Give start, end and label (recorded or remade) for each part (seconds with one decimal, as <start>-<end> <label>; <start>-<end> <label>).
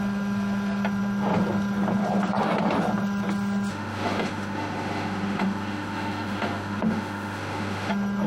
0.0-3.7 recorded; 3.7-7.9 remade; 7.9-8.3 recorded